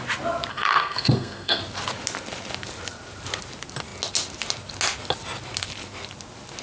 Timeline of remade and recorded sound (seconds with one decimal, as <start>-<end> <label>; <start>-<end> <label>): 0.0-0.5 recorded; 0.5-1.6 remade; 1.6-6.6 recorded